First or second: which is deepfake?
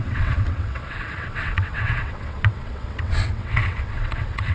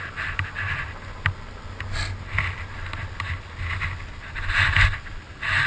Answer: first